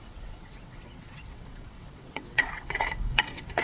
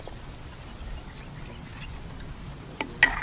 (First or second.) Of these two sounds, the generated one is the first